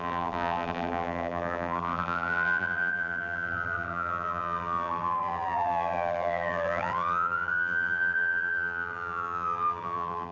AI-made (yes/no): yes